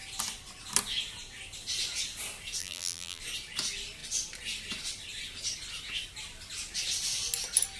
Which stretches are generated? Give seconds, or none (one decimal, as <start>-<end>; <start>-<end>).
2.6-3.2